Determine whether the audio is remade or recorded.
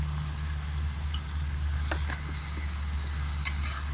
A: recorded